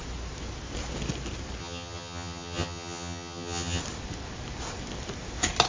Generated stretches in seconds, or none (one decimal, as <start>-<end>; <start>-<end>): 1.6-3.8